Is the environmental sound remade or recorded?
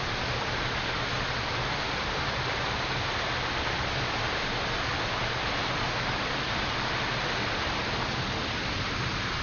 recorded